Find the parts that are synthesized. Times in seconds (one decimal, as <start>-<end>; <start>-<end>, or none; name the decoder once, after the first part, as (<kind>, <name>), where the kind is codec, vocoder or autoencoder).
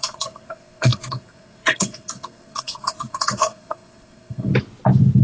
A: 0.0-4.5 (codec, SNAC)